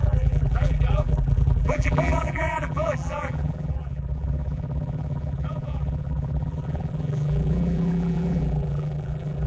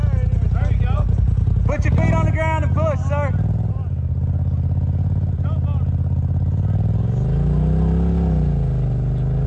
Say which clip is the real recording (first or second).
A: second